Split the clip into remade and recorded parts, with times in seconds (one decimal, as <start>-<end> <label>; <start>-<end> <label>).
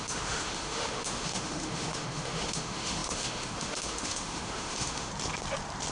0.0-5.1 remade; 5.1-5.9 recorded